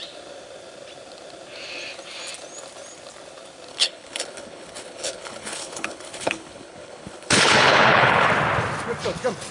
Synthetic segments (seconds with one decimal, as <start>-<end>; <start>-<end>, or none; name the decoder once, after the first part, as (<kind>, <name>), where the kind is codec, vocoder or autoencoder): 3.7-8.3 (codec, HILCodec)